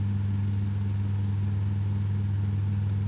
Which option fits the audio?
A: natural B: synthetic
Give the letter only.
A